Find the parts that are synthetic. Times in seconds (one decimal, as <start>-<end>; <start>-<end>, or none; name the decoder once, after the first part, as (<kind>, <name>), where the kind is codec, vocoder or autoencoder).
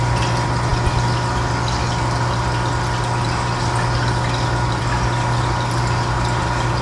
none